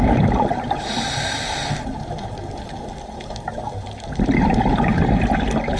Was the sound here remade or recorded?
recorded